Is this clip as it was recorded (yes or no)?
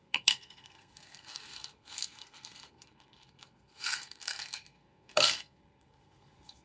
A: no